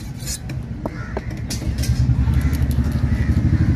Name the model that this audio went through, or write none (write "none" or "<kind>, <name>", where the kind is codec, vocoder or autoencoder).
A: none